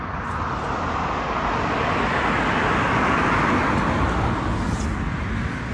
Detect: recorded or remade recorded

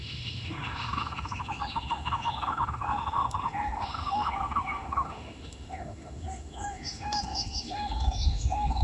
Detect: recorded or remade remade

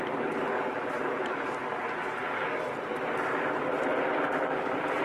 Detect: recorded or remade recorded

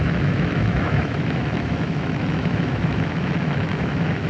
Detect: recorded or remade remade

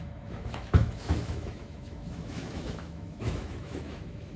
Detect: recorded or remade remade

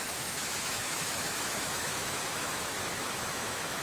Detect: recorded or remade remade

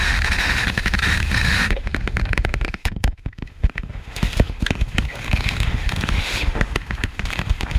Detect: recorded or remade remade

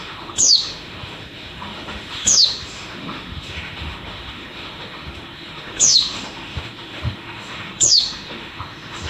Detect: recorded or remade remade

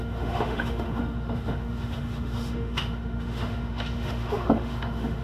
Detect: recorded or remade remade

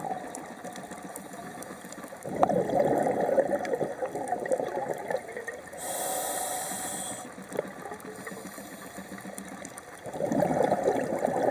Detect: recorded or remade recorded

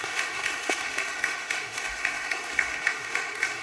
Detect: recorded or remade remade